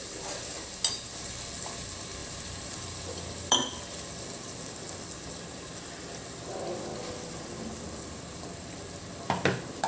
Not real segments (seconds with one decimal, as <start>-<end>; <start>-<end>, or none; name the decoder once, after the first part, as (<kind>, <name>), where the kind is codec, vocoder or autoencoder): 2.2-3.6 (vocoder, BigVGAN v2); 6.9-7.7